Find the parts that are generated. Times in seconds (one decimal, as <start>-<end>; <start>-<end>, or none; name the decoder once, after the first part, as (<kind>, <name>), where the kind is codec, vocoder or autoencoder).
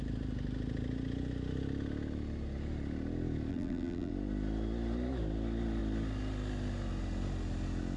3.5-4.1 (vocoder, BigVGAN v2)